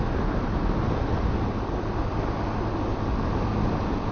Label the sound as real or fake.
real